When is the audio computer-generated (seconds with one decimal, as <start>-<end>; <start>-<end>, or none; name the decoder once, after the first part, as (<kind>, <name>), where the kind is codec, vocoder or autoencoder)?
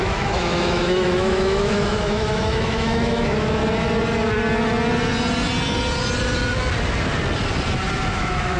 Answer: 0.0-3.6 (autoencoder, DAC-VAE); 8.1-8.6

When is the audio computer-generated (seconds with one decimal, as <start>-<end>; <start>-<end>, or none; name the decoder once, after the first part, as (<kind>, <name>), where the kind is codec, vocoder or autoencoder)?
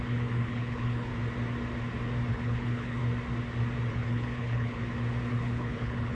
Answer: 0.0-1.1 (codec, HILCodec); 2.3-3.0; 3.9-4.8; 5.3-6.1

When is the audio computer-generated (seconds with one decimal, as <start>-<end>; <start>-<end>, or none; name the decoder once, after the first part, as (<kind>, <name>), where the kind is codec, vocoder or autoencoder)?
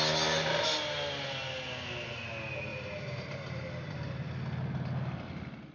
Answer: 2.7-4.1 (vocoder, BigVGAN v2)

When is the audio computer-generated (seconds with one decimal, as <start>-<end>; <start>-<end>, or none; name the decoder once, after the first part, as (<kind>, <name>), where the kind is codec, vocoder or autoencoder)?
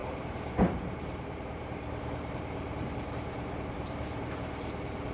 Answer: 0.0-5.1 (vocoder, BigVGAN v2)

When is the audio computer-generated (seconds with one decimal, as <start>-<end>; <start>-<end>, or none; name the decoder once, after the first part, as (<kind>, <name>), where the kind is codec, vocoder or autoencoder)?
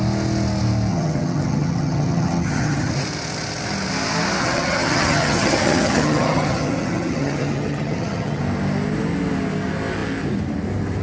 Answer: 0.9-2.9 (vocoder, HiFi-GAN); 4.4-8.4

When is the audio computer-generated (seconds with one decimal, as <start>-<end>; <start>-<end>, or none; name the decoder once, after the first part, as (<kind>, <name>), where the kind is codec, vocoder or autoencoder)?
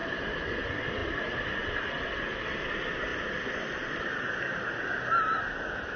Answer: 0.0-0.5 (vocoder, BigVGAN v2)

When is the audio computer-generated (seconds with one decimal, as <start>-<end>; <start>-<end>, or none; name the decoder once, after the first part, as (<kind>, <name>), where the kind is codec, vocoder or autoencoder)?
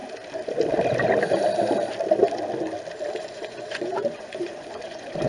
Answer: 3.2-5.3 (vocoder, Vocos)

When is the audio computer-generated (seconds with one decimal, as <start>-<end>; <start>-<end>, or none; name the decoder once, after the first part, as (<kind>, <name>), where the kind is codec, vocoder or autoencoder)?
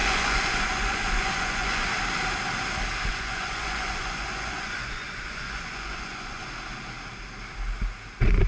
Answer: 0.0-1.9 (vocoder, Vocos); 3.1-6.4; 8.1-8.5